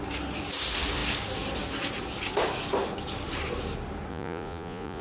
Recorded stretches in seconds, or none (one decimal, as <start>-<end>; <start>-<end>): 0.0-4.1